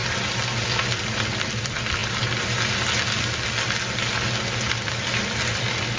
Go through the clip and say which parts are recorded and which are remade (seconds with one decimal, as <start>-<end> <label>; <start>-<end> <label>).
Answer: 0.0-2.0 remade; 2.0-5.6 recorded; 5.6-6.0 remade

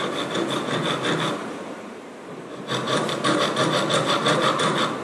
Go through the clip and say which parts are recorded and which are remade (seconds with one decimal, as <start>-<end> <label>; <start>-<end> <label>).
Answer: 0.0-1.4 recorded; 1.4-3.4 remade; 3.4-5.0 recorded

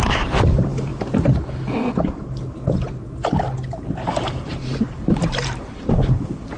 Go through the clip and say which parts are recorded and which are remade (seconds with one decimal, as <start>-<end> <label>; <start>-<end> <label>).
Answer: 0.0-0.9 remade; 0.9-4.3 recorded; 4.3-6.6 remade

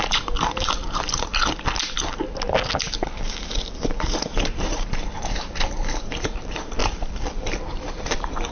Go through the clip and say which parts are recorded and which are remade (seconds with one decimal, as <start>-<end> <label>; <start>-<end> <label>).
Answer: 0.0-1.3 remade; 1.3-3.0 recorded; 3.0-8.5 remade

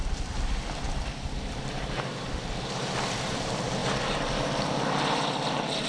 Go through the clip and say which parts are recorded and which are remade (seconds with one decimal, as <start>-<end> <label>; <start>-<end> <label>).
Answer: 0.0-5.9 remade

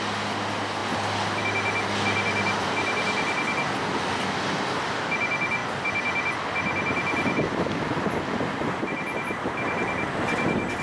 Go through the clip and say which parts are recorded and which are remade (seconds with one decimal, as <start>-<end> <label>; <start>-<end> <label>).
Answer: 0.0-10.8 recorded

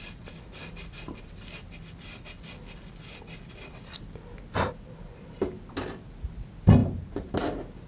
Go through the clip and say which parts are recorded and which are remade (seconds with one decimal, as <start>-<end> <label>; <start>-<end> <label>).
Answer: 0.0-6.8 recorded; 6.8-7.4 remade; 7.4-7.9 recorded

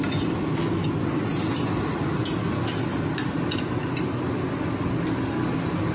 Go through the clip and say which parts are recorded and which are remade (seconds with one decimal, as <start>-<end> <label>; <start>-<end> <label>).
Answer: 0.0-5.9 recorded